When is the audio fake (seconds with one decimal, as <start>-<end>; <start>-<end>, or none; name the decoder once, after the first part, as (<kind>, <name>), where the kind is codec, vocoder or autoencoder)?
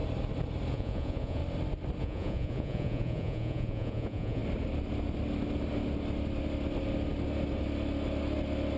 0.7-1.4 (vocoder, Vocos); 2.0-4.4